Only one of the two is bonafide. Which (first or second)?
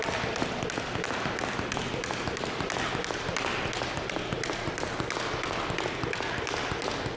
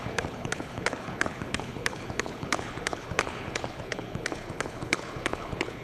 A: first